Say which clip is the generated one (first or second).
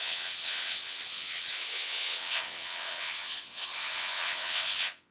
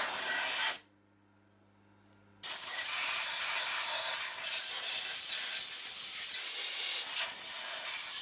first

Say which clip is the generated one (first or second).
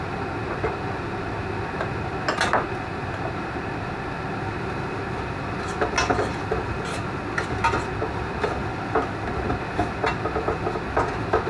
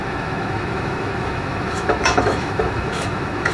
second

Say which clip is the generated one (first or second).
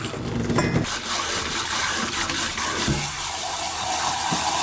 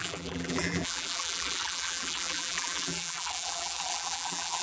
second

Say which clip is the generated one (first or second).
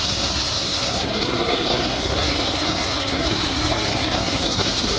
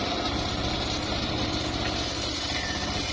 first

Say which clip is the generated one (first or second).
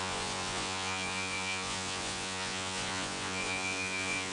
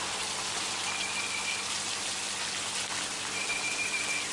first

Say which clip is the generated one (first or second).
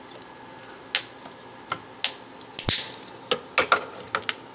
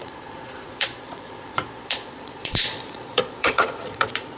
second